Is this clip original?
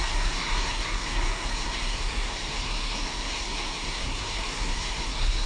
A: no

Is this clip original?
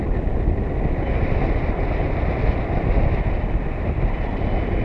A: yes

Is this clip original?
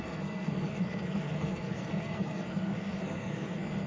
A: no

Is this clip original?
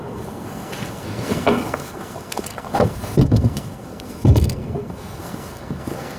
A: no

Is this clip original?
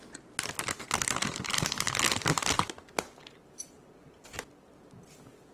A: yes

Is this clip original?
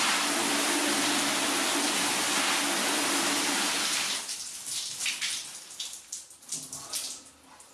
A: yes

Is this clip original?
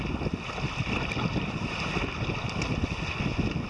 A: yes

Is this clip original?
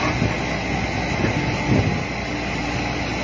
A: yes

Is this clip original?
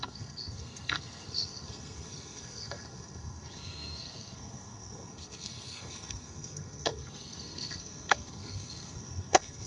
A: no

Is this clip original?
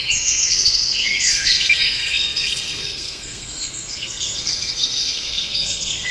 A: no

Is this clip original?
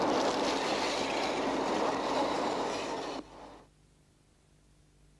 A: yes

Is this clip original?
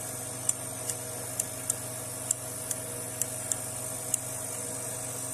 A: yes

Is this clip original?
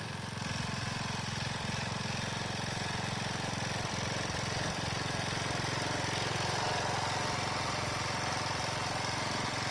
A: yes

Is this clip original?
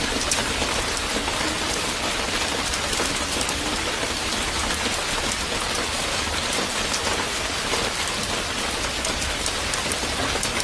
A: yes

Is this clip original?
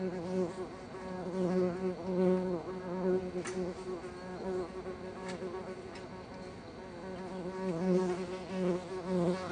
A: yes